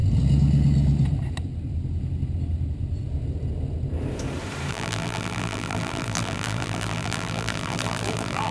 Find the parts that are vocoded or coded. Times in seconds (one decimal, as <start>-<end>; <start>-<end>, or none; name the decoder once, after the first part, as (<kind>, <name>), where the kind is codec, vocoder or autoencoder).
4.7-8.5 (vocoder, BigVGAN v2)